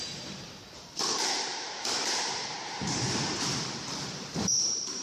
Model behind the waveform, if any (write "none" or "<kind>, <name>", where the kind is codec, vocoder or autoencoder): vocoder, BigVGAN v2